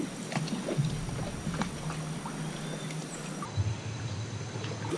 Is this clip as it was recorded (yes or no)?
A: yes